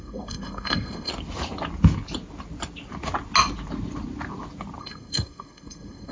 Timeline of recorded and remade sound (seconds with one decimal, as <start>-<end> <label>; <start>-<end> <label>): 0.0-1.1 remade; 1.1-4.8 recorded; 4.8-6.1 remade